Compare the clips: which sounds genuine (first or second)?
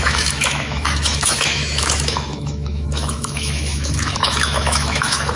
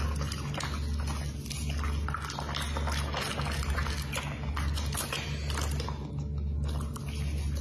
second